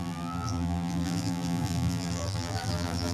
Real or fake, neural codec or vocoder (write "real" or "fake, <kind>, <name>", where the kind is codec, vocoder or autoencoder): fake, vocoder, BigVGAN v2